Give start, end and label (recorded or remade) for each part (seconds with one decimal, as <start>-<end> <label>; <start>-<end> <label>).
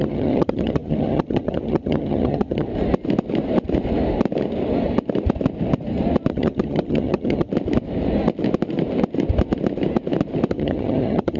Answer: 0.0-2.7 remade; 2.7-6.3 recorded; 6.3-7.5 remade; 7.5-10.5 recorded; 10.5-11.4 remade